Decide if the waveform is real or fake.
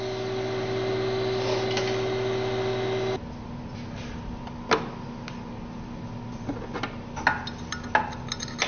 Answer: real